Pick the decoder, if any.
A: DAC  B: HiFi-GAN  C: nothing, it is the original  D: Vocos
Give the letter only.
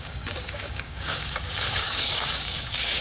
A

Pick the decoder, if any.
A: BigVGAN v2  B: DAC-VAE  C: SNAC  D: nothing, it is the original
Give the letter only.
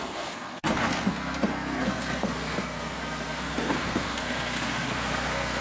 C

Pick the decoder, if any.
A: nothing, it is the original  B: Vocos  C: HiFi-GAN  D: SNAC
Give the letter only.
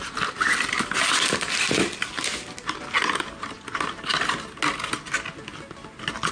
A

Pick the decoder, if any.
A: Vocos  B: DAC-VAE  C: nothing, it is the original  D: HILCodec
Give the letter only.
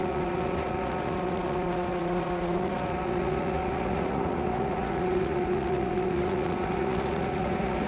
A